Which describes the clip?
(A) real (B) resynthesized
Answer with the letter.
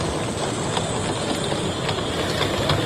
A